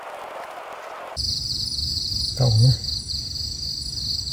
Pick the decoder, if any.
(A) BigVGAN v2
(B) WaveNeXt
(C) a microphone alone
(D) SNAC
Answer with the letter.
C